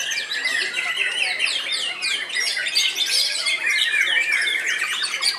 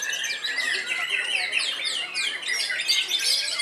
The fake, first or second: first